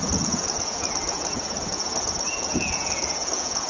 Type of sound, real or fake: fake